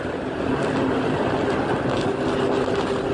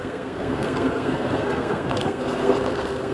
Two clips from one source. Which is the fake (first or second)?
second